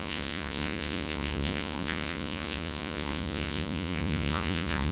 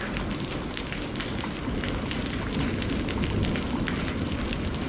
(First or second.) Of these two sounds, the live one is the second